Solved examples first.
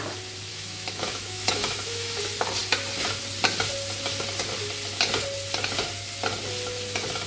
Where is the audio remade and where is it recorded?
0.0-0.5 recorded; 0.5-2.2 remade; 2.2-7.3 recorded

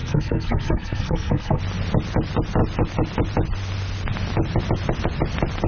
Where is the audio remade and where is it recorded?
0.0-1.6 remade; 1.6-5.7 recorded

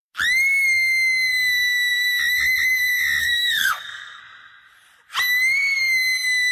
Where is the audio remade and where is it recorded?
0.0-3.2 recorded; 3.2-4.2 remade; 4.2-6.5 recorded

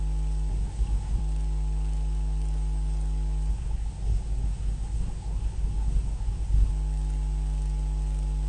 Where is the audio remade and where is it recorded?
0.0-0.5 recorded; 0.5-1.2 remade; 1.2-3.5 recorded; 3.5-6.7 remade; 6.7-8.5 recorded